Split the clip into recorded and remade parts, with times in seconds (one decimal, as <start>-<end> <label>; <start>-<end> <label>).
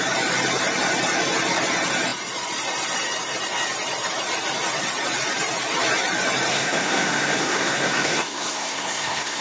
0.0-6.5 recorded; 6.5-9.4 remade